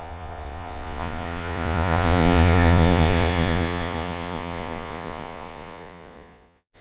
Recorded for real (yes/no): no